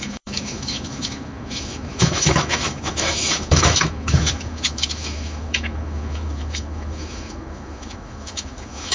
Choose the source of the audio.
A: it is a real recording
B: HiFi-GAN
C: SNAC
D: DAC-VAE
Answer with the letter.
D